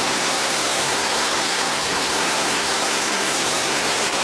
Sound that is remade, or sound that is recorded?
remade